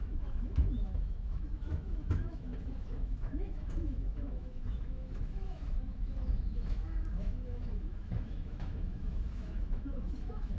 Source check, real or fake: fake